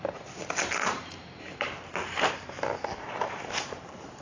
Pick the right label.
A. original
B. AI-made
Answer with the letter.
B